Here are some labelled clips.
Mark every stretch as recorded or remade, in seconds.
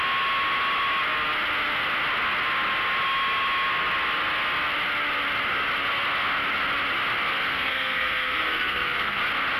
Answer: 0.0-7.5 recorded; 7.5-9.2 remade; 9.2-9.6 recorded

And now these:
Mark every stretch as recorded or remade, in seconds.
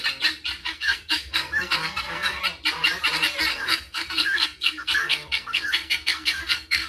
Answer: 0.0-0.6 recorded; 0.6-2.4 remade; 2.4-3.5 recorded; 3.5-6.9 remade